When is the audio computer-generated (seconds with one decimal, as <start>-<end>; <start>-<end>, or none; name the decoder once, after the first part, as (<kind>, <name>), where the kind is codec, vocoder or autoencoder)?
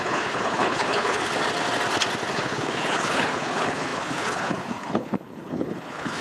0.0-1.3 (codec, HILCodec); 2.3-6.2